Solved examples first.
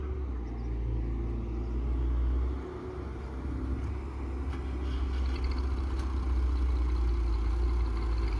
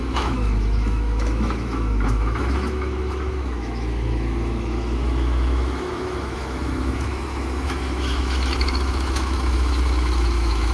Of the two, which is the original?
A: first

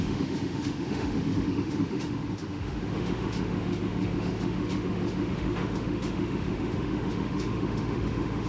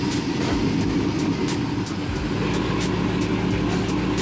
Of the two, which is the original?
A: second